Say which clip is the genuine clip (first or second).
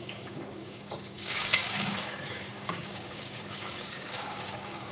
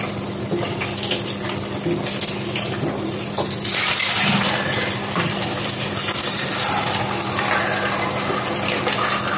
second